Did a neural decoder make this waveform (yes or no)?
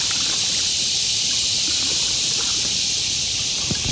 yes